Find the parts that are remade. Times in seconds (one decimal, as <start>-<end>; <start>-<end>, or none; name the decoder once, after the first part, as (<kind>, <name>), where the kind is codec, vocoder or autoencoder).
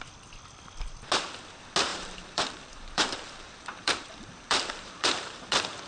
1.9-5.4 (vocoder, BigVGAN v2)